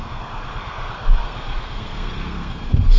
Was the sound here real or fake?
fake